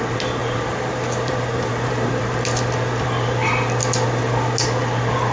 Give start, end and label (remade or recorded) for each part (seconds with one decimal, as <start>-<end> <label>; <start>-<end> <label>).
0.0-0.4 recorded; 0.4-2.2 remade; 2.2-5.3 recorded